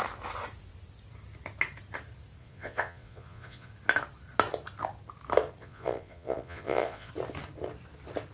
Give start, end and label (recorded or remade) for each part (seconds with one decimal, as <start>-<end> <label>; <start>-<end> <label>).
0.0-2.4 recorded; 2.4-3.7 remade; 3.7-5.6 recorded; 5.6-7.1 remade; 7.1-8.3 recorded

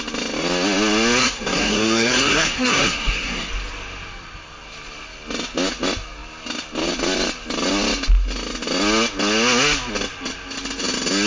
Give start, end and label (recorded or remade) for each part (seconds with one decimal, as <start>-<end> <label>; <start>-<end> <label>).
0.0-1.2 recorded; 1.2-3.5 remade; 3.5-11.3 recorded

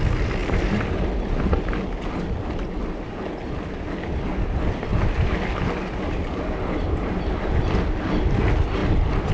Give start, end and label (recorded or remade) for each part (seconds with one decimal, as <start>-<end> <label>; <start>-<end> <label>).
0.0-0.4 recorded; 0.4-1.8 remade; 1.8-8.8 recorded; 8.8-9.3 remade

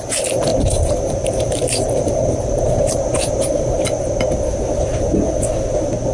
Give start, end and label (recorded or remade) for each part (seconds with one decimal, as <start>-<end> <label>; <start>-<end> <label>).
0.0-0.5 recorded; 0.5-4.2 remade; 4.2-6.1 recorded

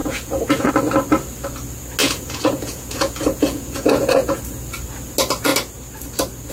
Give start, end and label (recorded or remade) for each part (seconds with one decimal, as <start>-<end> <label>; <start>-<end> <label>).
0.0-0.7 remade; 0.7-2.0 recorded; 2.0-4.4 remade; 4.4-6.5 recorded

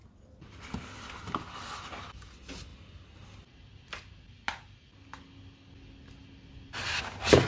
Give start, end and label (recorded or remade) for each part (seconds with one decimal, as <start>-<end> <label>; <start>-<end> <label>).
0.0-7.5 recorded

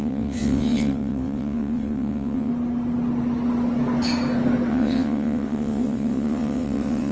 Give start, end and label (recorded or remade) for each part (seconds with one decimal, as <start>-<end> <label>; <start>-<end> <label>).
0.0-2.5 remade; 2.5-4.7 recorded; 4.7-7.1 remade

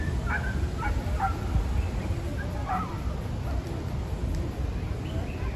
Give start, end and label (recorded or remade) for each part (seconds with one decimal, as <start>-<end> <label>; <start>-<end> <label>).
0.0-2.3 recorded; 2.3-4.0 remade; 4.0-5.6 recorded